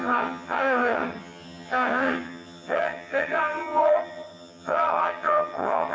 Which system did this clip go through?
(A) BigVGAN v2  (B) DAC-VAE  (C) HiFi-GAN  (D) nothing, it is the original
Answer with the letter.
C